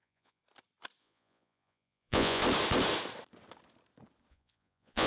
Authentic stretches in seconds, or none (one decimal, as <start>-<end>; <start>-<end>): 0.4-1.0; 2.4-4.3